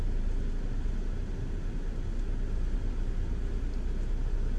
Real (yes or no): yes